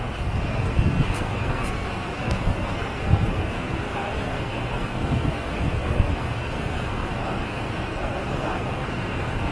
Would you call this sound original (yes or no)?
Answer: no